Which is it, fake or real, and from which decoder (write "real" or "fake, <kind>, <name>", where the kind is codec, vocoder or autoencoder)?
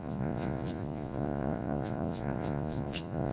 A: fake, vocoder, Vocos